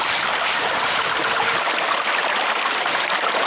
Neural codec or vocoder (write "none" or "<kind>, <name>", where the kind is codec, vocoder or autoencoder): none